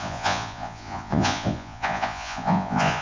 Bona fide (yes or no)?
no